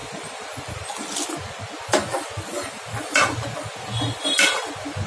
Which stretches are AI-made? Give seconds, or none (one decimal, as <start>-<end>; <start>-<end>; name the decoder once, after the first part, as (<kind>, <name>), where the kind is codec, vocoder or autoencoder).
none